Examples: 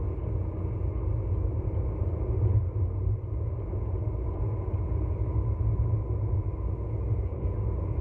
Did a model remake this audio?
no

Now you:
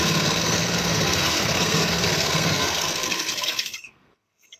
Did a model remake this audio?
yes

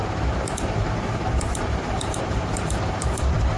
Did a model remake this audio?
yes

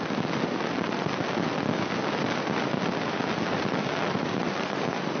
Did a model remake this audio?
no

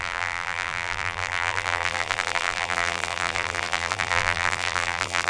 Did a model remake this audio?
yes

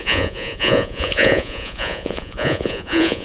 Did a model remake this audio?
yes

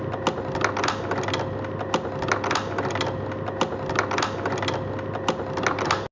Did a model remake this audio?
no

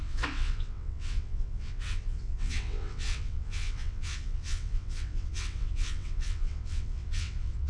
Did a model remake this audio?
yes